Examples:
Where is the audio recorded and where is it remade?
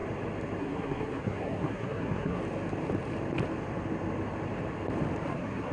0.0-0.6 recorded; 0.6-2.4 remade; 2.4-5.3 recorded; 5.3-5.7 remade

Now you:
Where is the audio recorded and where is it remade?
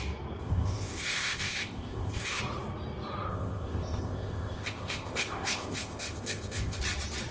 0.0-0.4 recorded; 0.4-2.4 remade; 2.4-3.3 recorded; 3.3-6.8 remade; 6.8-7.3 recorded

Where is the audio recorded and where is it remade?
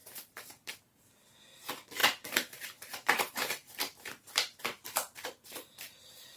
0.0-0.7 remade; 0.7-2.0 recorded; 2.0-4.6 remade; 4.6-6.4 recorded